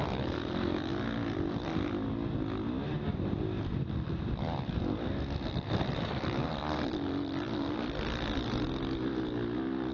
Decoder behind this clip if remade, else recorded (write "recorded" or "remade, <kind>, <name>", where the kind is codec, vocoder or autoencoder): recorded